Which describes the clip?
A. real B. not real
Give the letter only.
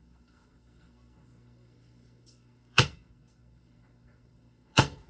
B